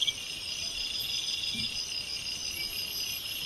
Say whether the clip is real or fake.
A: real